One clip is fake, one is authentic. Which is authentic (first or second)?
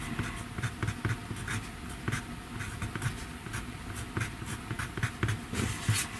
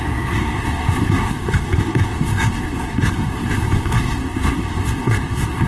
first